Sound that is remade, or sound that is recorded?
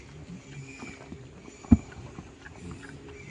recorded